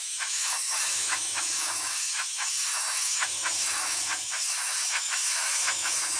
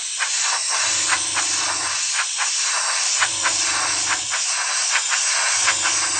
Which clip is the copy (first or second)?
first